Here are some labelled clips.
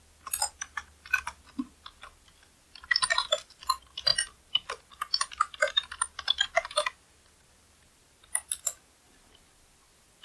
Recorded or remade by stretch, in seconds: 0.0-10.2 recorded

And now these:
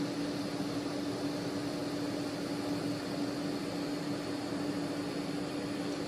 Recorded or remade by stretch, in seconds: 0.0-6.1 recorded